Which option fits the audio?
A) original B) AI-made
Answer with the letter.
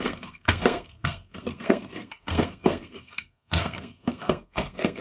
B